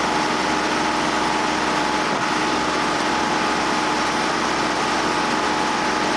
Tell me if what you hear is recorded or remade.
recorded